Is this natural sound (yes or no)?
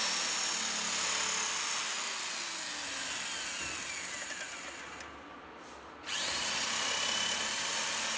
yes